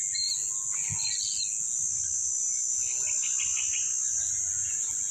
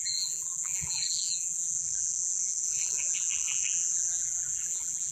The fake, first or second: second